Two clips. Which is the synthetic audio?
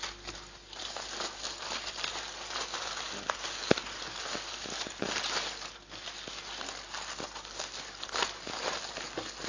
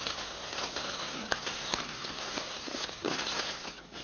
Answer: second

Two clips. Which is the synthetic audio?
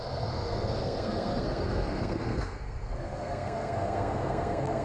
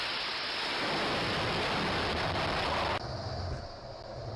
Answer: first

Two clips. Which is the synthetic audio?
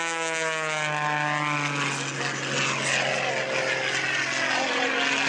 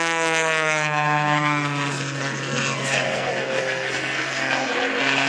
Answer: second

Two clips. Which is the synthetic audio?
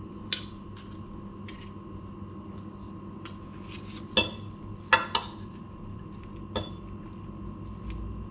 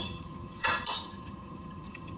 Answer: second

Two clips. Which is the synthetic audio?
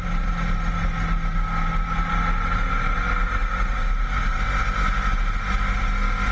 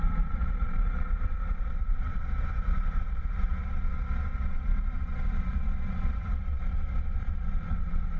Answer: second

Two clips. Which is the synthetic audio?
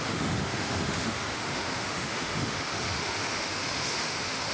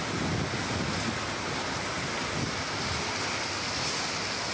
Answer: first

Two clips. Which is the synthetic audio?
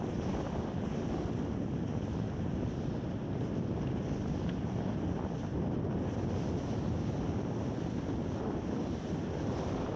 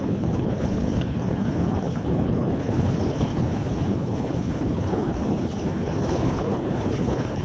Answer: second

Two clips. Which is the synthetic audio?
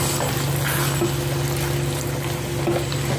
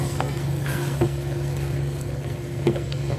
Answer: second